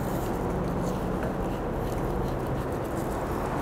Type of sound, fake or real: real